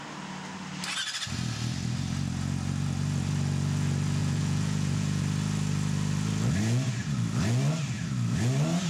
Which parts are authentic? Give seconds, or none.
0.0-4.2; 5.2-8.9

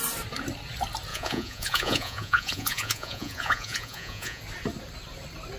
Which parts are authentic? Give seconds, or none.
0.0-1.1; 4.4-5.6

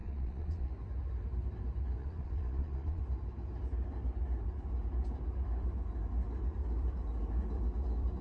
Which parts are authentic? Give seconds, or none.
0.7-2.0; 3.0-8.2